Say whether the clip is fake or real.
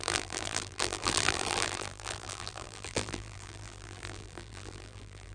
fake